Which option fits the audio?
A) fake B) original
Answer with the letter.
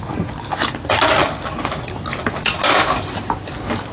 B